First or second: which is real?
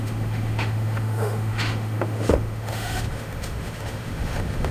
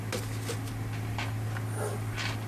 second